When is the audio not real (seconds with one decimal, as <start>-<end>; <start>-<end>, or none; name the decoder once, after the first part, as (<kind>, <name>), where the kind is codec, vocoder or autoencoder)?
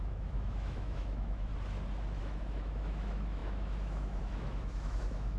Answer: 0.0-1.5 (autoencoder, DAC-VAE); 2.2-5.4